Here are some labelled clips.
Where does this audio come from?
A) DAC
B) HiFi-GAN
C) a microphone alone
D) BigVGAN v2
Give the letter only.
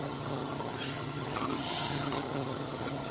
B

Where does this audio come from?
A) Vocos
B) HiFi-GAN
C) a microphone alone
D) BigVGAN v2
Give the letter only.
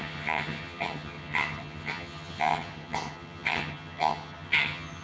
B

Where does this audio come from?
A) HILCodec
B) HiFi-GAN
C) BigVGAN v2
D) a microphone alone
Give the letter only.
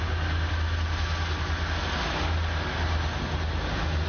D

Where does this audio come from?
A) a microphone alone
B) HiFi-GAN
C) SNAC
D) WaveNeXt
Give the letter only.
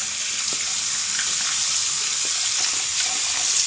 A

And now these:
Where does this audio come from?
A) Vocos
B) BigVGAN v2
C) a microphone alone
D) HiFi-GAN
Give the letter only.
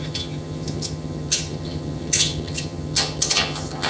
D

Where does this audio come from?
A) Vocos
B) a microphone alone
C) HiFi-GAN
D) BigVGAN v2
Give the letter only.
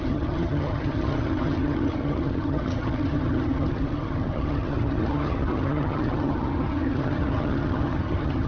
C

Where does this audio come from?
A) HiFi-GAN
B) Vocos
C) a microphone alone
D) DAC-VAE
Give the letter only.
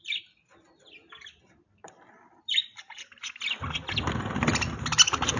C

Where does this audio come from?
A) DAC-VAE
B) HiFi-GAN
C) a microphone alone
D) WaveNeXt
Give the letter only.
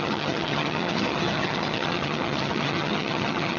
B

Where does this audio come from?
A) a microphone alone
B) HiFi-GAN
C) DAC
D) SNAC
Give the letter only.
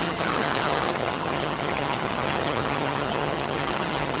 B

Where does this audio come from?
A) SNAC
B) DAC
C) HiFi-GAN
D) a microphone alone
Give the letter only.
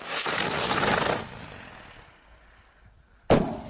D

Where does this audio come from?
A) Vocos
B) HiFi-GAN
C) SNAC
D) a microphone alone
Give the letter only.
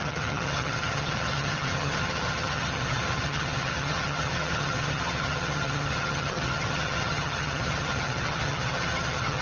B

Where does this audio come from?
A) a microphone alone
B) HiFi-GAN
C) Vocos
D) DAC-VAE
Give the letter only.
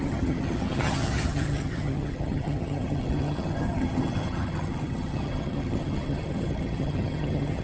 B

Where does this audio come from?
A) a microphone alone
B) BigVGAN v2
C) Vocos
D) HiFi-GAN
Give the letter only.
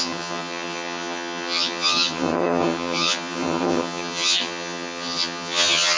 D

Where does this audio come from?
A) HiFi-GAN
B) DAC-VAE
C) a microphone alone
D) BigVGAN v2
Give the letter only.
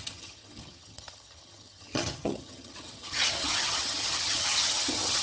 A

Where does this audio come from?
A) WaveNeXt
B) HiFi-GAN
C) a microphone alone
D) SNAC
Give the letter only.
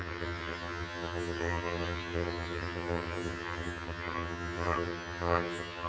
B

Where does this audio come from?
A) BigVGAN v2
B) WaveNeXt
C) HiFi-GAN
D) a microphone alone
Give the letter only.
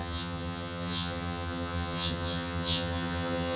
C